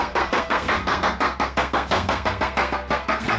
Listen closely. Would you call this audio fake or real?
fake